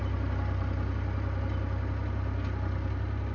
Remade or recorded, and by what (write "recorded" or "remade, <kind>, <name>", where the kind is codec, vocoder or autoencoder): recorded